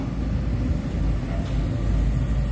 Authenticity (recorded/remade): recorded